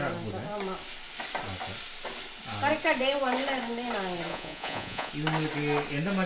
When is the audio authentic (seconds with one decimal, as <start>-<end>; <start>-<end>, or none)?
0.0-4.3; 5.1-6.3